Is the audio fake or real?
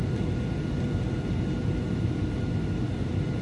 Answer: real